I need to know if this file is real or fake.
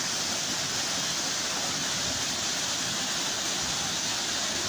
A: real